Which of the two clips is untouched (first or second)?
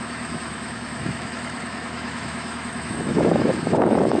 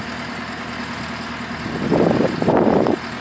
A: second